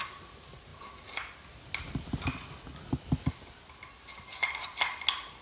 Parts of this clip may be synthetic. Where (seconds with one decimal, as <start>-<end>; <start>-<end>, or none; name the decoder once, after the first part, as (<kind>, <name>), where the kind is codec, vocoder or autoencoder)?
none